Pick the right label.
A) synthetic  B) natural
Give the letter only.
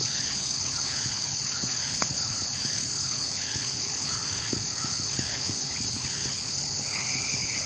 A